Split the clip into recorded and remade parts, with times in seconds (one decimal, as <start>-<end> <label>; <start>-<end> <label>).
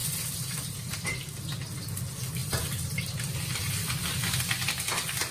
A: 0.0-1.0 remade; 1.0-2.4 recorded; 2.4-4.2 remade; 4.2-5.3 recorded